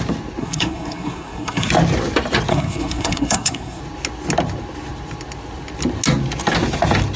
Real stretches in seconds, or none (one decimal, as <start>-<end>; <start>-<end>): 0.0-0.4; 1.7-2.5; 3.8-7.2